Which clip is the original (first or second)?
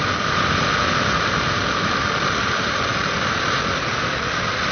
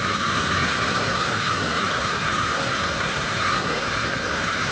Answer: first